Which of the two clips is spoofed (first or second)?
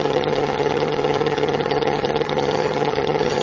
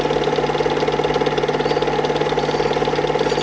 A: first